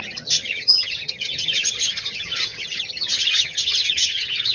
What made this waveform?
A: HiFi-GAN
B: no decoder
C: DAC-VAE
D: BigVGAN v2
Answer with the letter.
A